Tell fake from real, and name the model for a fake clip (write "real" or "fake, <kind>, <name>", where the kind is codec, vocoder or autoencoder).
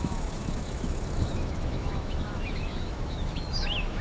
fake, autoencoder, DAC-VAE